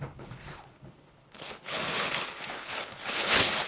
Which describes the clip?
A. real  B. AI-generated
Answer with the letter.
B